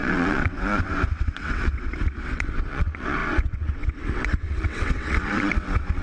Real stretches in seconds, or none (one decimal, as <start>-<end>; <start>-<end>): none